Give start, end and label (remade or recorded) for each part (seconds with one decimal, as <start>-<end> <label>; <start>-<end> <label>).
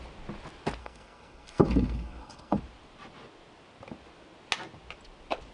0.0-0.8 recorded; 0.8-2.6 remade; 2.6-5.5 recorded